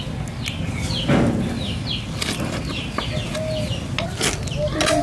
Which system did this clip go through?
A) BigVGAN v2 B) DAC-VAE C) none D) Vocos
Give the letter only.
C